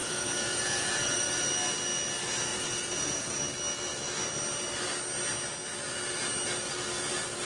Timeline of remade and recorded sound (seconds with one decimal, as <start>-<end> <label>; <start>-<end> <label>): 0.0-1.5 remade; 1.5-2.5 recorded; 2.5-3.4 remade; 3.4-7.5 recorded